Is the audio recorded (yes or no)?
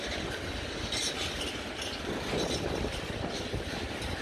yes